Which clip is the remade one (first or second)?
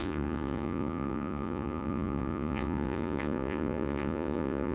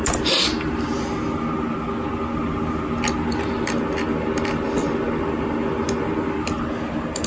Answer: first